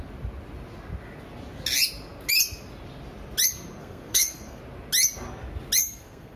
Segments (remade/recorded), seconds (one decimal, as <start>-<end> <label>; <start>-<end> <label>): 0.0-3.8 recorded; 3.8-4.6 remade; 4.6-5.8 recorded; 5.8-6.4 remade